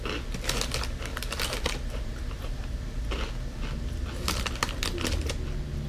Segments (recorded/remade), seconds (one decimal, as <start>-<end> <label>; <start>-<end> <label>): 0.0-1.1 recorded; 1.1-3.2 remade; 3.2-5.9 recorded